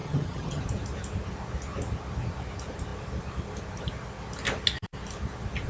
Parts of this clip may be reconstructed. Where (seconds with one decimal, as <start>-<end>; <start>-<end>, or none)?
0.0-0.6